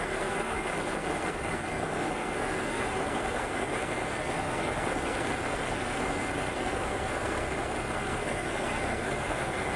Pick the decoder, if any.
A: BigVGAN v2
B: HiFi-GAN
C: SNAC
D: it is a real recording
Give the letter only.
C